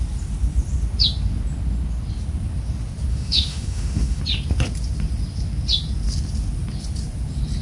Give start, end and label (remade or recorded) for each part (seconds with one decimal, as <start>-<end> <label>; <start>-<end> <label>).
0.0-3.1 recorded; 3.1-4.2 remade; 4.2-7.6 recorded